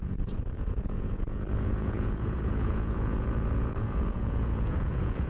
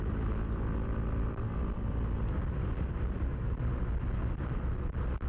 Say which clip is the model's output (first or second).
first